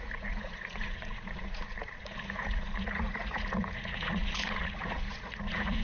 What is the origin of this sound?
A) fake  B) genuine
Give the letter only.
A